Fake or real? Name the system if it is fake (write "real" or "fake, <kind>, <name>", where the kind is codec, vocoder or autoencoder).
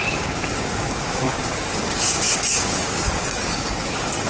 fake, codec, DAC